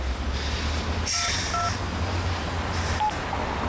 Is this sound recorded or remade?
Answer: recorded